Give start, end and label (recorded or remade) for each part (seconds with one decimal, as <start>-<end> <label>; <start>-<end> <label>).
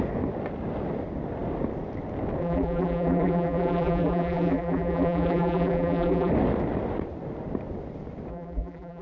0.0-2.4 recorded; 2.4-6.3 remade; 6.3-8.3 recorded; 8.3-9.0 remade